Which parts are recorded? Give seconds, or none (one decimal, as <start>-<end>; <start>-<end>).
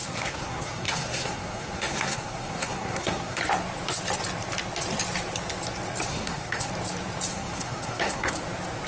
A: 3.4-6.1; 6.7-7.3; 8.3-8.9